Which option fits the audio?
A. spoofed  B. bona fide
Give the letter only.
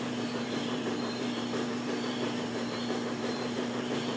A